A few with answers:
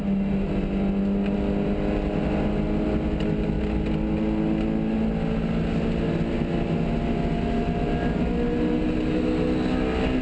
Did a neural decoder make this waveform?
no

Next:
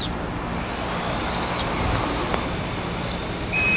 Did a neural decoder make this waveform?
no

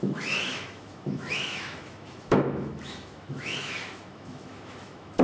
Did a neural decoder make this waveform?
yes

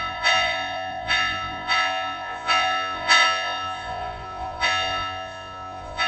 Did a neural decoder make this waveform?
yes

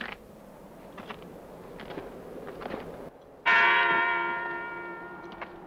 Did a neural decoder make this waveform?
no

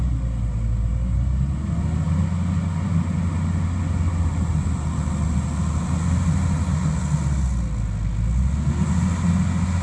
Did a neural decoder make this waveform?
no